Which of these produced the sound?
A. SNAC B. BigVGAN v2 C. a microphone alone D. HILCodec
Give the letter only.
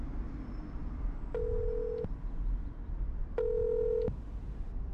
C